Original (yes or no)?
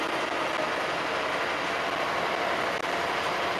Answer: yes